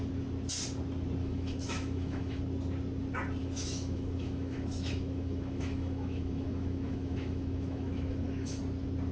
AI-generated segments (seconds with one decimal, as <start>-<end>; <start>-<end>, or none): 1.2-2.4; 3.4-8.6